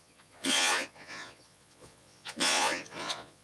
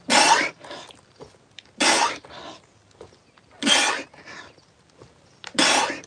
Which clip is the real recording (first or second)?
second